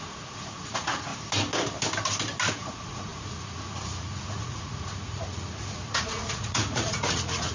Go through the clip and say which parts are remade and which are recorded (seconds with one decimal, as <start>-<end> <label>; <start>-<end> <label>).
0.0-1.1 remade; 1.1-2.5 recorded; 2.5-7.5 remade